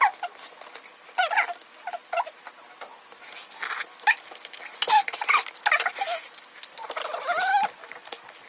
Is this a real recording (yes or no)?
yes